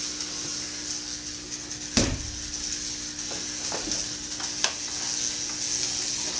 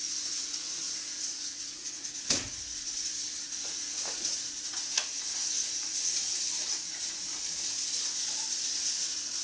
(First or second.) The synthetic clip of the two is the second